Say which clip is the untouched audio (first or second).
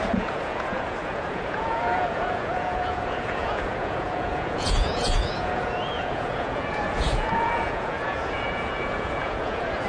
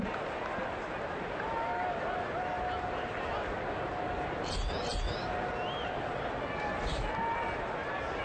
second